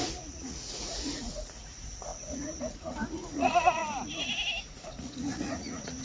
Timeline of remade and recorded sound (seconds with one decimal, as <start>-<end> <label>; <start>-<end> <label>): 0.0-3.8 remade; 3.8-4.6 recorded; 4.6-6.0 remade